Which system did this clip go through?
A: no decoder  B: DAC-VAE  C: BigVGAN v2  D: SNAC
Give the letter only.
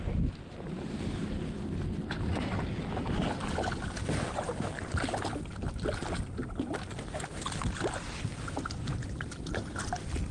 A